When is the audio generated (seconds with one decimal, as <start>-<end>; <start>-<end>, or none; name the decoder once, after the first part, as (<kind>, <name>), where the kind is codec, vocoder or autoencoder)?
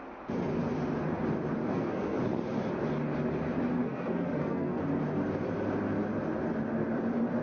1.6-2.2 (codec, SNAC); 3.8-4.8